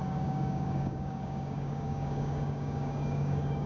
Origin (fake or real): fake